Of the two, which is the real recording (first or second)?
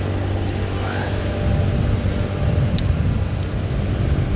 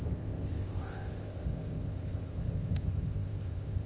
first